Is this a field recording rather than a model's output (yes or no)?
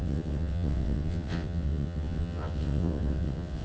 no